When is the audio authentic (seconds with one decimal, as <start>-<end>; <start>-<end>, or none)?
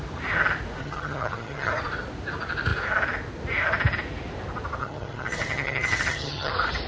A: 0.0-0.8; 1.7-4.8; 6.5-6.9